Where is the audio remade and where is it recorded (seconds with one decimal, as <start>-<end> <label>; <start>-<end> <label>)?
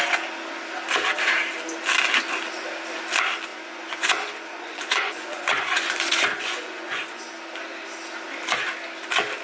0.0-3.5 recorded; 3.5-7.2 remade; 7.2-9.4 recorded